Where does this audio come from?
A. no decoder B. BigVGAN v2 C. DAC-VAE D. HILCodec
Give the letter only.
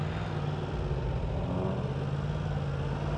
A